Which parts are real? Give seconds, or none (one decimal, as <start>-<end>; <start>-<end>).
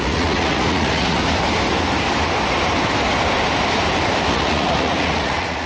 1.2-4.3